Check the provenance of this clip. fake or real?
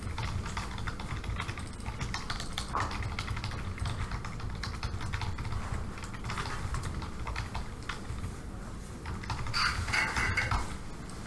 real